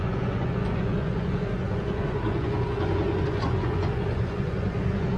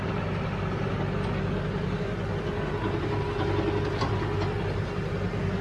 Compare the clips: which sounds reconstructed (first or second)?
first